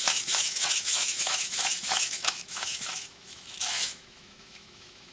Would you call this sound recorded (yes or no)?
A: no